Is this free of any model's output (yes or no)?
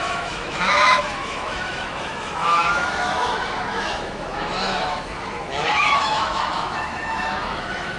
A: no